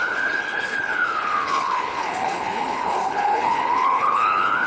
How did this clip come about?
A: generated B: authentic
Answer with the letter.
A